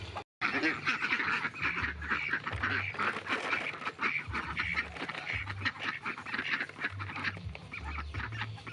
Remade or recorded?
recorded